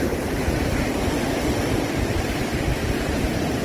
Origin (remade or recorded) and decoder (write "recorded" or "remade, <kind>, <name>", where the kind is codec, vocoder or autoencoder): recorded